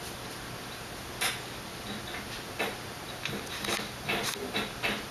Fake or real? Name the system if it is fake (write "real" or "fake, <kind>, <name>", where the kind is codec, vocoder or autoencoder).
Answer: real